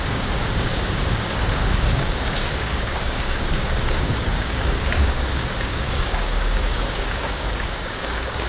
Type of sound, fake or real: fake